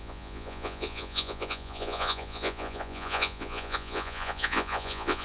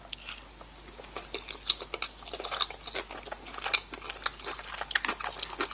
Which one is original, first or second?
second